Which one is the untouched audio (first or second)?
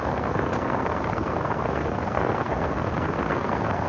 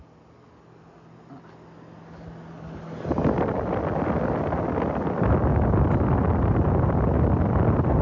second